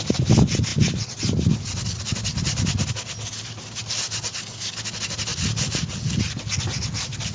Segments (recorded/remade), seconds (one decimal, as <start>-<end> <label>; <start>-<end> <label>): 0.0-7.3 recorded